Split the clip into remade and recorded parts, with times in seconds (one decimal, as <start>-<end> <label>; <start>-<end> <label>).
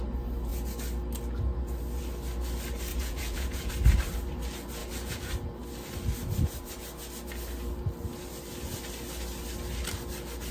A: 0.0-2.9 recorded; 2.9-3.7 remade; 3.7-10.5 recorded